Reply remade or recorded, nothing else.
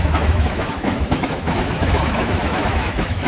remade